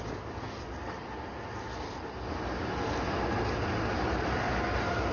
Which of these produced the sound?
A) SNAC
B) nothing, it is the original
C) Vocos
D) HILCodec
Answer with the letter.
B